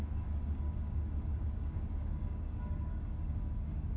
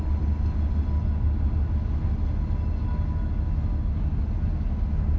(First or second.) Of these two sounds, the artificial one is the first